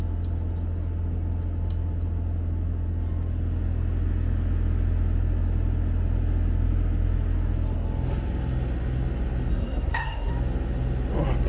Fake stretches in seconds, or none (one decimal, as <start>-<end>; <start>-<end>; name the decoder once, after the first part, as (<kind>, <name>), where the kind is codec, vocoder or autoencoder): 9.5-10.3 (codec, SNAC)